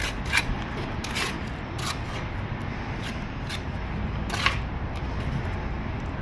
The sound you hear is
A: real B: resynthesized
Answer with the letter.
A